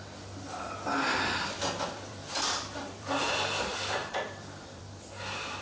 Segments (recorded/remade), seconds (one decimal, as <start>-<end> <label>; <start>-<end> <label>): 0.0-1.1 recorded; 1.1-3.3 remade; 3.3-4.0 recorded; 4.0-5.1 remade; 5.1-5.6 recorded